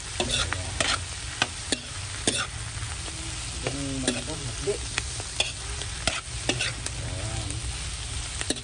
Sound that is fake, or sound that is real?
real